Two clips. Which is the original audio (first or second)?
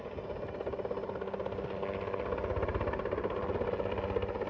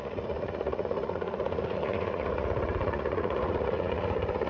first